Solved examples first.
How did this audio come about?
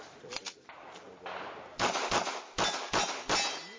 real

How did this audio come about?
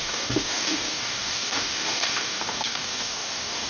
fake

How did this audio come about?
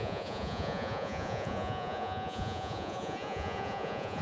fake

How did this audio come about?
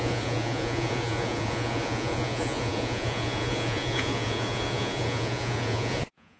fake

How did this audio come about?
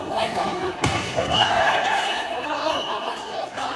fake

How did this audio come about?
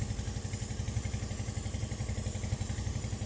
real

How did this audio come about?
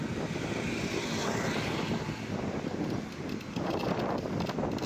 real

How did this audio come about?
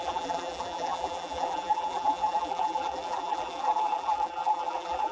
fake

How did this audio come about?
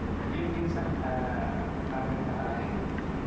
real